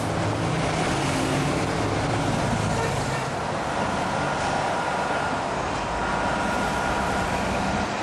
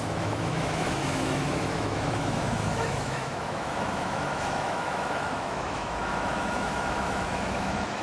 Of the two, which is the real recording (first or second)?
first